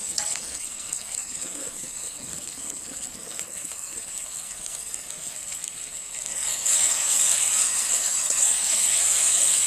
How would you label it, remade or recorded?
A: remade